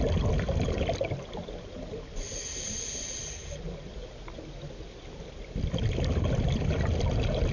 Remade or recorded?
recorded